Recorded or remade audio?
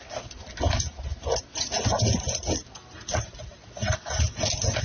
recorded